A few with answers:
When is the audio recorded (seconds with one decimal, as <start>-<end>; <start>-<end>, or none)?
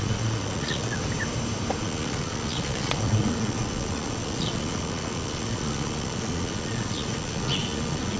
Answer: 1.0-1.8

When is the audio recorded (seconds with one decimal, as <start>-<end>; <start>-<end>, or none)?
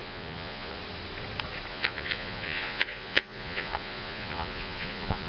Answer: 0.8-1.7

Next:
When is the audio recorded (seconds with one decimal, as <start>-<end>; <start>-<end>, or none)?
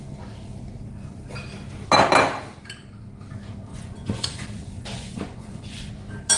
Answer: 0.0-3.7; 5.9-6.4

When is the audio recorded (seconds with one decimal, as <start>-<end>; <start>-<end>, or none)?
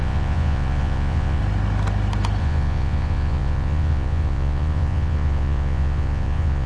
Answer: 1.4-2.4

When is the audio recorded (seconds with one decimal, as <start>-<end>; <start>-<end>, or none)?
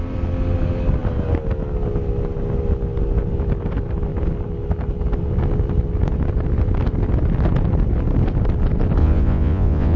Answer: 0.0-9.0